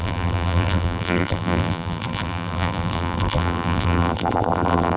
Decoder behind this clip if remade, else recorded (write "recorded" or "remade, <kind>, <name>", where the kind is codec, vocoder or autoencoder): remade, vocoder, BigVGAN v2